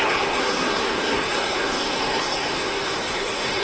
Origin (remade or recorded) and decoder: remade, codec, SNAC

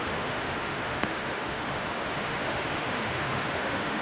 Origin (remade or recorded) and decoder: remade, autoencoder, DAC-VAE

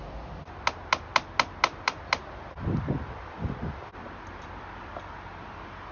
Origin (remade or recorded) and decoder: recorded